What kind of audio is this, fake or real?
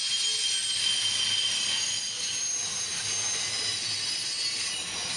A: real